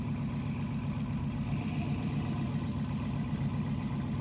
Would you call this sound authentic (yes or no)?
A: yes